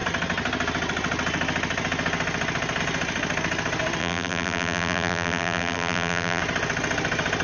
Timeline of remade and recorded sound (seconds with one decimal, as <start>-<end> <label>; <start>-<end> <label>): 0.0-4.0 recorded; 4.0-6.4 remade; 6.4-7.4 recorded